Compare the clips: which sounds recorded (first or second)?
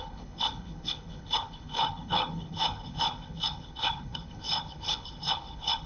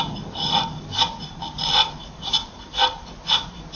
second